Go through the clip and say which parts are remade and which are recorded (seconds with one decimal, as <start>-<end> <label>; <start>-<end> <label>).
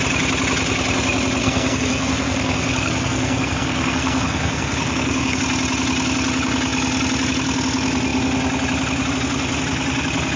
0.0-1.4 recorded; 1.4-5.4 remade; 5.4-10.4 recorded